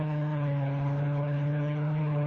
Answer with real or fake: fake